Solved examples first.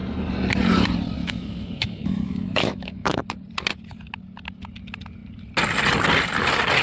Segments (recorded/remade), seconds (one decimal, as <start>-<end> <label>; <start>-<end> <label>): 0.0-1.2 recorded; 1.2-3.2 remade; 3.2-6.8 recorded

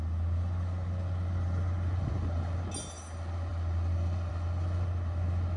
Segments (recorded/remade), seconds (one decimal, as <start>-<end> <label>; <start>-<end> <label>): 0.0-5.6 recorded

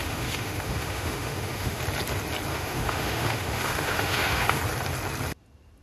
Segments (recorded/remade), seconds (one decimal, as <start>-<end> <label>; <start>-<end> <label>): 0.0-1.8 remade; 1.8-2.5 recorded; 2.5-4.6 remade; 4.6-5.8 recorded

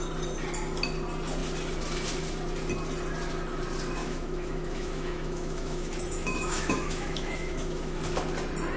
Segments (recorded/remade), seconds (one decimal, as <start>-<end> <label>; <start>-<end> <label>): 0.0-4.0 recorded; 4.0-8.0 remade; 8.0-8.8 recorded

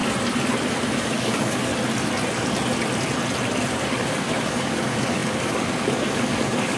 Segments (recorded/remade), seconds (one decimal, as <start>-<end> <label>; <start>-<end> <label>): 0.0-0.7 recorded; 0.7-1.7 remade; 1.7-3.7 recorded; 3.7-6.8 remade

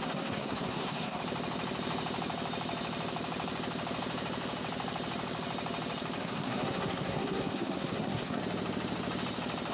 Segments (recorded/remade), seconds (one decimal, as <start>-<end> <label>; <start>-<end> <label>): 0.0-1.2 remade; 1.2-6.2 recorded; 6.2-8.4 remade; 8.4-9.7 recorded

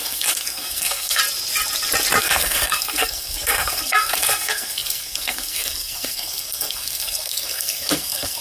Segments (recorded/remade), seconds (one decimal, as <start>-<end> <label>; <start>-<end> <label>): 0.0-1.2 remade; 1.2-2.2 recorded; 2.2-8.4 remade

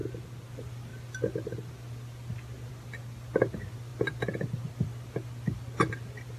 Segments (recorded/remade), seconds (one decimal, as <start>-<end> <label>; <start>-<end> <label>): 0.0-6.4 recorded